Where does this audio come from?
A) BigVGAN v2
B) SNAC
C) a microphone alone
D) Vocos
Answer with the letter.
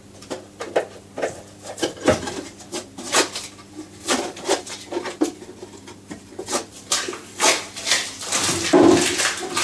C